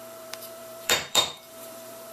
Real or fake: fake